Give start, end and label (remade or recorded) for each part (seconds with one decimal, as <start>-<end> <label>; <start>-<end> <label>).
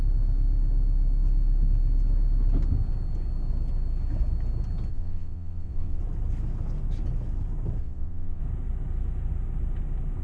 0.0-4.9 recorded; 4.9-6.0 remade; 6.0-7.8 recorded; 7.8-8.4 remade; 8.4-10.2 recorded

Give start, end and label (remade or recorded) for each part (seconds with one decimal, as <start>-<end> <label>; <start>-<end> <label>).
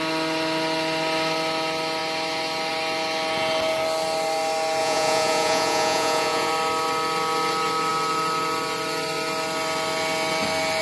0.0-4.8 recorded; 4.8-6.5 remade; 6.5-10.8 recorded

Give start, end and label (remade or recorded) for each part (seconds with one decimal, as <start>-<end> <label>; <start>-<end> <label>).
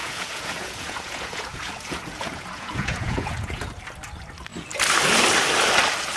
0.0-3.7 remade; 3.7-6.2 recorded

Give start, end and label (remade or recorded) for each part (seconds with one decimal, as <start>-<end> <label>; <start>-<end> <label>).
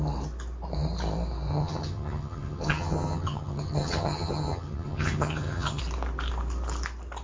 0.0-1.5 recorded; 1.5-5.8 remade; 5.8-7.2 recorded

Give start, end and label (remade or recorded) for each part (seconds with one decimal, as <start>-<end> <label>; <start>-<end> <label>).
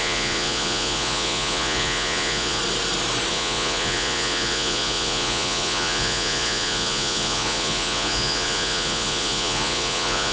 0.0-2.6 remade; 2.6-3.3 recorded; 3.3-10.3 remade